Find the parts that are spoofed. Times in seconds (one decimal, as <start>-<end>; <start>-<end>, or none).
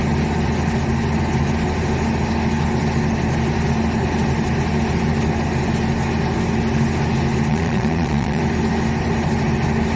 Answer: 7.5-8.4